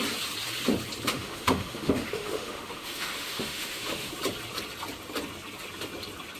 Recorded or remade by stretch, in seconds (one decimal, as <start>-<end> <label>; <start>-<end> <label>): 0.0-1.1 recorded; 1.1-4.1 remade; 4.1-6.4 recorded